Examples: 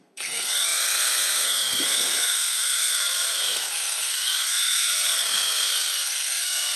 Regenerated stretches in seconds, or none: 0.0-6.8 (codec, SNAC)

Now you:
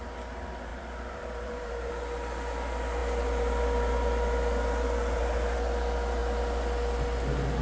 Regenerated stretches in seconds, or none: 0.7-1.9 (vocoder, BigVGAN v2)

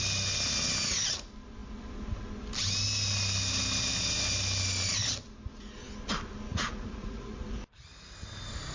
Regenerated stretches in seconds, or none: 6.5-7.4 (vocoder, Vocos)

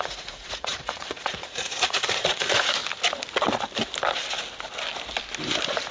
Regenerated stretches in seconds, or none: 0.0-2.8 (vocoder, Vocos)

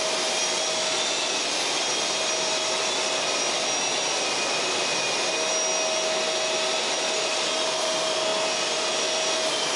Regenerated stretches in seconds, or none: none

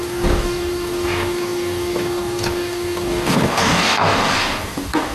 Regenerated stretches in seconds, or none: 0.0-5.1 (codec, DAC)

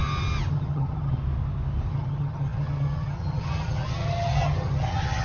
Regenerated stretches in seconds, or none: 0.5-1.2 (vocoder, HiFi-GAN); 1.9-5.2

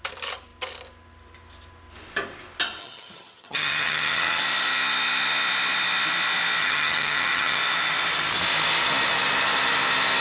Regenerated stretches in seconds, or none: 2.8-4.4 (vocoder, HiFi-GAN); 6.6-7.6